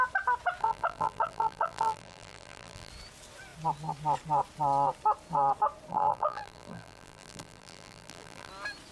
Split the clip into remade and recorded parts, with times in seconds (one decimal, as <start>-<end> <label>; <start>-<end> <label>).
0.0-0.6 recorded; 0.6-2.9 remade; 2.9-5.9 recorded; 5.9-8.5 remade; 8.5-8.9 recorded